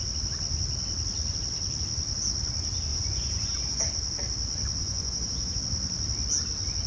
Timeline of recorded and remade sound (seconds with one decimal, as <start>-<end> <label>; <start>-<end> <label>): 0.0-2.9 recorded; 2.9-3.8 remade; 3.8-4.8 recorded; 4.8-5.6 remade; 5.6-6.9 recorded